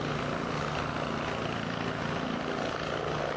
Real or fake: real